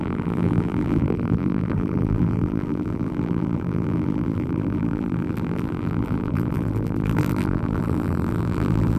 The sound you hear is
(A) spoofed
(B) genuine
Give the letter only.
A